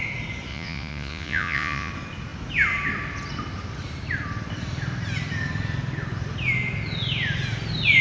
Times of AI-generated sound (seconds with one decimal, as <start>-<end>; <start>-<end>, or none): 0.5-1.9